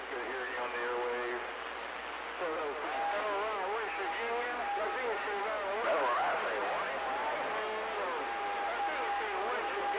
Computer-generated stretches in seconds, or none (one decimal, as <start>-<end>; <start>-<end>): none